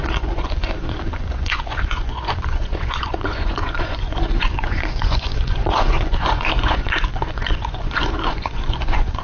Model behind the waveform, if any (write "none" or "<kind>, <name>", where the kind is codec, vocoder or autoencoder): vocoder, Vocos